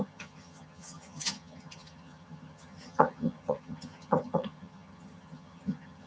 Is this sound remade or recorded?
remade